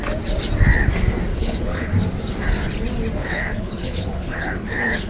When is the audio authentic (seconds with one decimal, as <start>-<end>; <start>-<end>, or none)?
0.0-1.3; 1.9-3.2